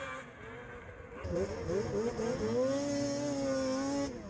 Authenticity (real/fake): real